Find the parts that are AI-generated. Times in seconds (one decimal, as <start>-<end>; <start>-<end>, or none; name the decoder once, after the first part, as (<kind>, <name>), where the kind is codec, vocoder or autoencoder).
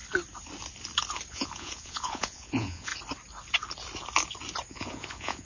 1.3-2.9 (vocoder, Vocos); 4.7-5.4